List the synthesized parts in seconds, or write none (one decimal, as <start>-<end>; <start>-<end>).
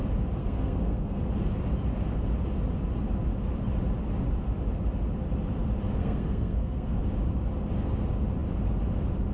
0.4-1.2; 6.0-7.0